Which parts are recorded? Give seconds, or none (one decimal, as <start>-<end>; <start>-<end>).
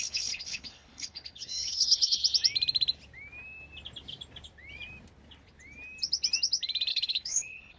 2.2-6.9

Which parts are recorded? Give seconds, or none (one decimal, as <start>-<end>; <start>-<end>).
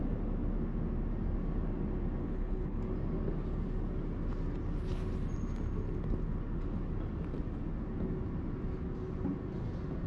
0.0-2.2; 2.8-10.1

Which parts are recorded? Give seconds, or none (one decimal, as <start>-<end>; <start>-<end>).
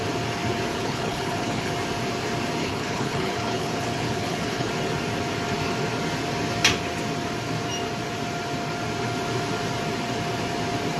0.0-0.7; 1.7-2.6; 4.7-11.0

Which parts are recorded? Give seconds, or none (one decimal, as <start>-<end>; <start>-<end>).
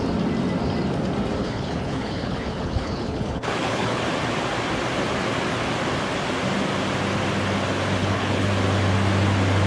0.0-1.4; 4.0-8.0; 8.5-9.7